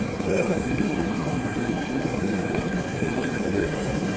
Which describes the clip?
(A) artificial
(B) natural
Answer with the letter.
A